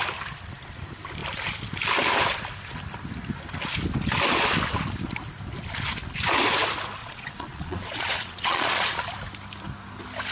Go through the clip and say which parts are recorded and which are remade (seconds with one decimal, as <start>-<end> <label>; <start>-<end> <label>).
0.0-7.0 recorded; 7.0-9.0 remade; 9.0-10.3 recorded

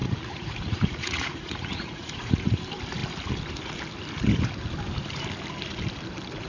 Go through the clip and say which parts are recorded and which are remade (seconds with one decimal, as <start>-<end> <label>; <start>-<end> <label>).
0.0-2.6 remade; 2.6-6.5 recorded

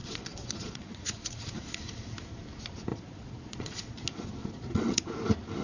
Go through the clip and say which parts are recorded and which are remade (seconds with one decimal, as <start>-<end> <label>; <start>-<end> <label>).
0.0-1.8 remade; 1.8-2.9 recorded; 2.9-4.0 remade; 4.0-4.4 recorded; 4.4-5.0 remade; 5.0-5.6 recorded

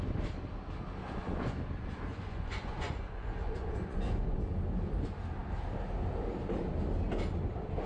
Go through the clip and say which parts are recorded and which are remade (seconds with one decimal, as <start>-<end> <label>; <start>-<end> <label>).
0.0-1.0 recorded; 1.0-1.5 remade; 1.5-2.1 recorded; 2.1-4.5 remade; 4.5-7.9 recorded

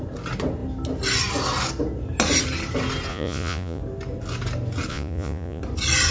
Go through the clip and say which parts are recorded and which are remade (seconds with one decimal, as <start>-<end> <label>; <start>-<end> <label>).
0.0-3.1 recorded; 3.1-3.8 remade; 3.8-4.9 recorded; 4.9-5.6 remade; 5.6-6.1 recorded

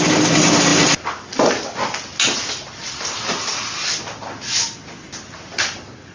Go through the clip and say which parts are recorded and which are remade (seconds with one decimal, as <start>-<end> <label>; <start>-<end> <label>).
0.0-6.1 recorded